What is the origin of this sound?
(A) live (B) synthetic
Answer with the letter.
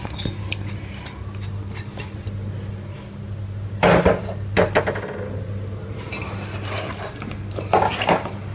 A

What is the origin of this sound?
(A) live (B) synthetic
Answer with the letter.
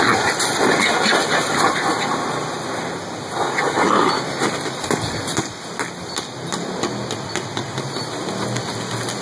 A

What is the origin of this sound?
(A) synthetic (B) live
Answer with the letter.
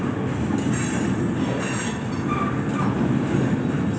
B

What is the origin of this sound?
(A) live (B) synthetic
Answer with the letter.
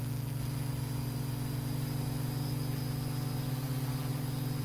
A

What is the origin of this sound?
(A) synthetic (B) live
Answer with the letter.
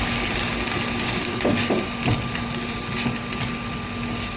B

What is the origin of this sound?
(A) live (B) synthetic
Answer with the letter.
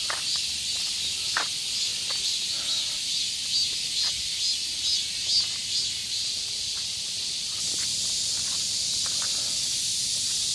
A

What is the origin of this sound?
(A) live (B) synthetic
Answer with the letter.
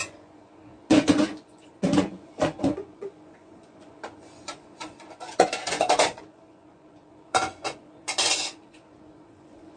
B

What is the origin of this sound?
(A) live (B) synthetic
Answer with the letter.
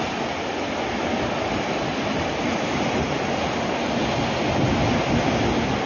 A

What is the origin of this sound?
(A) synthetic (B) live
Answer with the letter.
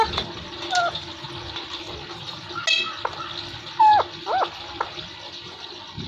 B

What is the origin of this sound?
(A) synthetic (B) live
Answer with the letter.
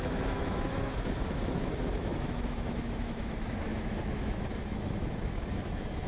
A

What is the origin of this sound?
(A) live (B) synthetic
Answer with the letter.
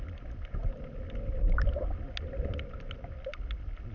A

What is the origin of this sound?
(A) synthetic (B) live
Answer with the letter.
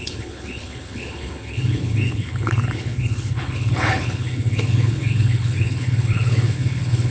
A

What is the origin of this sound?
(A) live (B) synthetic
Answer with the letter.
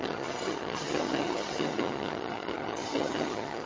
B